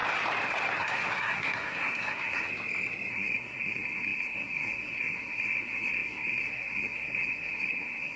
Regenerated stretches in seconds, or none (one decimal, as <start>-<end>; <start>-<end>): 0.8-2.5; 3.1-8.2